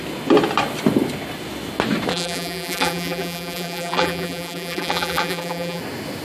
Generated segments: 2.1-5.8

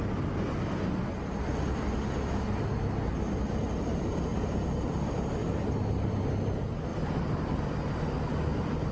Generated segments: 4.3-4.9; 6.9-8.3

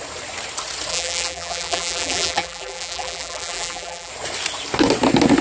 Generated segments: 0.9-4.1

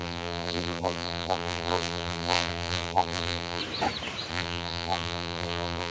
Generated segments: 0.0-3.6; 4.3-5.9